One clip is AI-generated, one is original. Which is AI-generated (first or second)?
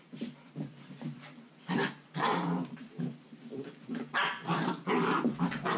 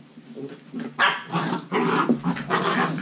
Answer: first